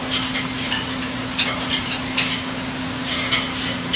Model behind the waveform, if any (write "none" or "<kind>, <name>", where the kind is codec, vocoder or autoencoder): none